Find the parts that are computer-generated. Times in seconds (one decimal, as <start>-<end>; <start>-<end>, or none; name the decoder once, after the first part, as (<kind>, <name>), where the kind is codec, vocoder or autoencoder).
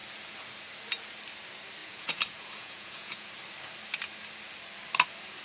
1.8-3.3 (vocoder, Vocos)